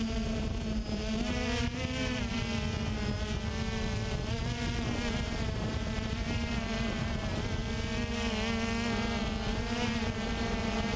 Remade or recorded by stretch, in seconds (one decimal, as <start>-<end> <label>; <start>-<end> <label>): 0.0-1.0 remade; 1.0-1.6 recorded; 1.6-2.4 remade; 2.4-5.1 recorded; 5.1-7.6 remade; 7.6-9.5 recorded; 9.5-11.0 remade